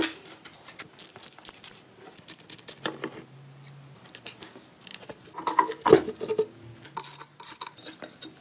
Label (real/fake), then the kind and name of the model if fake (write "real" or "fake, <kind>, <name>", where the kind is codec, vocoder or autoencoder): real